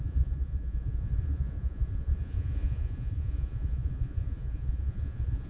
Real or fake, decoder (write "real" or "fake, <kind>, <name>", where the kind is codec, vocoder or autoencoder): fake, vocoder, Vocos